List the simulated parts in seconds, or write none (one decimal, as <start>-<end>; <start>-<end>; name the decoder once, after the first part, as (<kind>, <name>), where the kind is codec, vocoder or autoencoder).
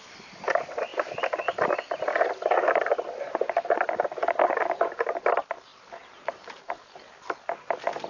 5.7-6.7 (vocoder, BigVGAN v2)